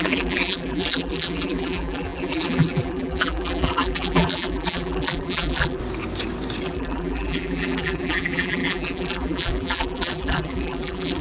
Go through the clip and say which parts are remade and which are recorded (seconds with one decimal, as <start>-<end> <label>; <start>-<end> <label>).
0.0-5.8 remade; 5.8-6.6 recorded; 6.6-11.2 remade